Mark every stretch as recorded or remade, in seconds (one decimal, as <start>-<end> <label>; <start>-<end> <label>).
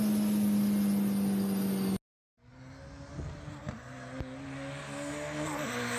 0.0-6.0 recorded